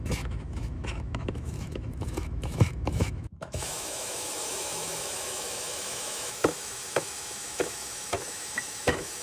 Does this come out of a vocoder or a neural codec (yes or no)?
yes